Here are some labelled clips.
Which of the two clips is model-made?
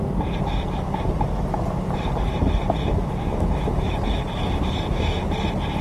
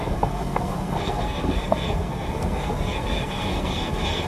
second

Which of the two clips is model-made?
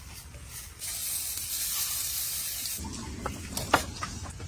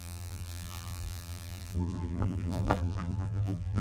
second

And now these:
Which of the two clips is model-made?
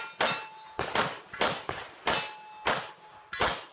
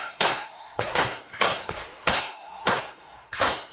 second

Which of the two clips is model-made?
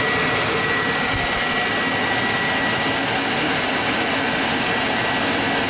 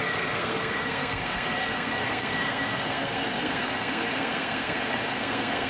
second